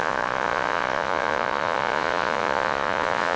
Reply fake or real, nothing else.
fake